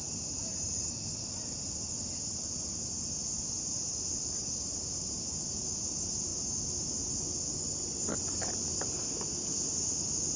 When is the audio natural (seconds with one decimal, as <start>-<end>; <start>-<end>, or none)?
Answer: 0.0-10.4